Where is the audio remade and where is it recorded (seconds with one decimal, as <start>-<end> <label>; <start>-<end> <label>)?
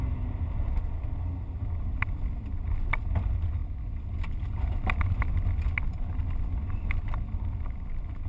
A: 0.0-8.3 recorded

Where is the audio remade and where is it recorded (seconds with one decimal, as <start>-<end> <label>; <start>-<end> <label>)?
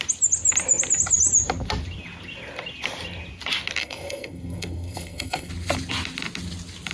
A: 0.0-3.8 recorded; 3.8-5.5 remade; 5.5-6.9 recorded